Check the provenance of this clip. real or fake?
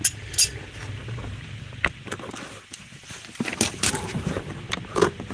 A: real